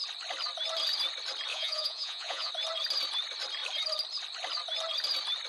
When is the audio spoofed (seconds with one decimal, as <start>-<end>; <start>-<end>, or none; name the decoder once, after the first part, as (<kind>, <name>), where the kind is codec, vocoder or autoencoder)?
1.5-2.5 (vocoder, Vocos)